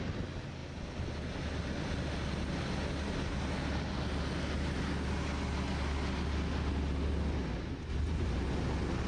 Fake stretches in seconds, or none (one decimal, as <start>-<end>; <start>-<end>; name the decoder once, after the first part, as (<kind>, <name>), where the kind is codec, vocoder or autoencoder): none